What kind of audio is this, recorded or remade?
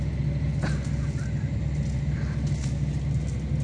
recorded